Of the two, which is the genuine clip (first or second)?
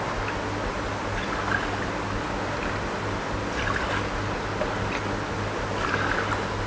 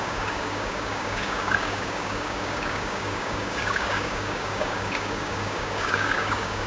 first